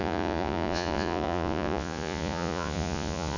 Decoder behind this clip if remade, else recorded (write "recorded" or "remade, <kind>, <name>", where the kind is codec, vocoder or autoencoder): remade, vocoder, Vocos